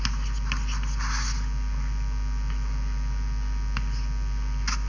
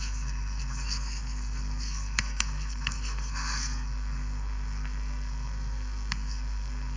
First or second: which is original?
first